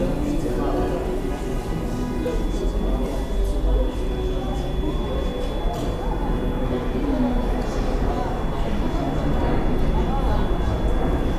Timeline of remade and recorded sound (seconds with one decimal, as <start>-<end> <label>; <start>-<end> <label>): 0.0-11.4 recorded